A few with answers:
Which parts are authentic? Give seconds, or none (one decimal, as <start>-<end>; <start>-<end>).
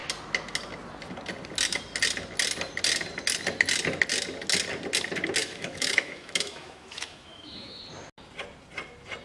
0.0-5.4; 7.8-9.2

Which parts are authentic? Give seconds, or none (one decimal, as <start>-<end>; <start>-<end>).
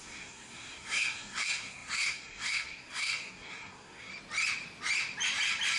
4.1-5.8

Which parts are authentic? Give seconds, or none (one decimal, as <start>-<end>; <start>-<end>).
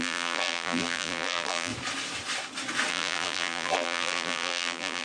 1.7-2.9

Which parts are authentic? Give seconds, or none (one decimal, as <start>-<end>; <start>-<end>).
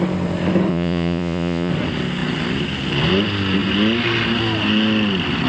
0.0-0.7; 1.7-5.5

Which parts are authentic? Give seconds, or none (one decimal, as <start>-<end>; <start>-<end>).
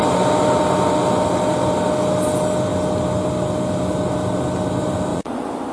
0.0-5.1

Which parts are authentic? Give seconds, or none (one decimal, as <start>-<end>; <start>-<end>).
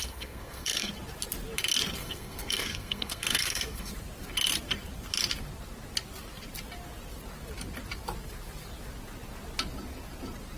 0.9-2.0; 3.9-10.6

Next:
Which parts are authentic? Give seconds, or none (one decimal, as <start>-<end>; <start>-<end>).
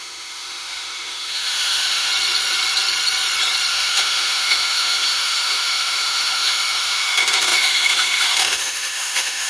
2.1-3.7